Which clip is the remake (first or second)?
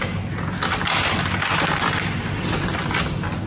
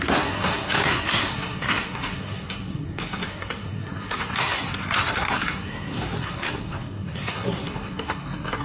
second